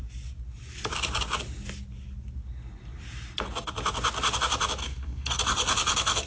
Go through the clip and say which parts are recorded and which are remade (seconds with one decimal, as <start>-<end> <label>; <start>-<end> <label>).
0.0-4.8 recorded; 4.8-5.4 remade; 5.4-6.3 recorded